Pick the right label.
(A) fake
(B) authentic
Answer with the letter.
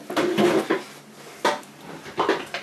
B